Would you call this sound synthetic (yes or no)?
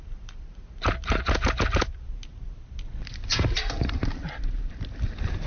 no